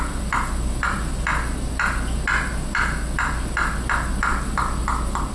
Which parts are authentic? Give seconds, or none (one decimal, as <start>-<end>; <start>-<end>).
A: 0.0-5.3